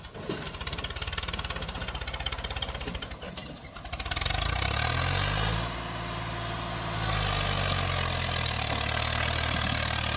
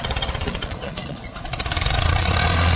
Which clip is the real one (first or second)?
first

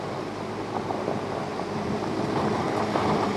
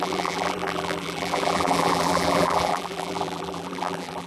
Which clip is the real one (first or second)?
first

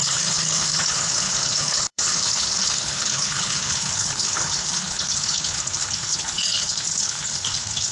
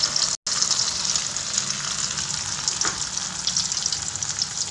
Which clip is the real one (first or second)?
second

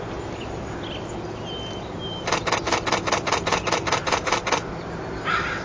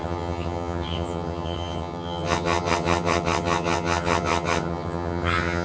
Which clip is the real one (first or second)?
first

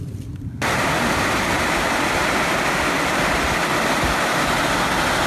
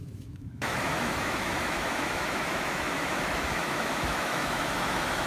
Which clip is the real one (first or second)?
first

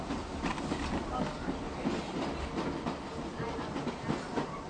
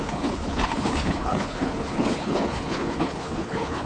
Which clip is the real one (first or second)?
first